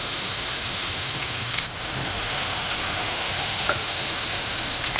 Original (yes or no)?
no